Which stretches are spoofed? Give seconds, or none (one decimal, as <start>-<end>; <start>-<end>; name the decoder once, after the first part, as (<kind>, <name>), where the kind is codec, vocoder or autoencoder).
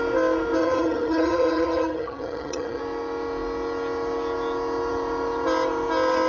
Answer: 0.6-2.8 (vocoder, HiFi-GAN)